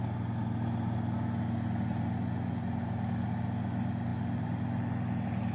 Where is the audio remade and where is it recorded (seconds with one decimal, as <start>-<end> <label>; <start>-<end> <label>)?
0.0-5.5 recorded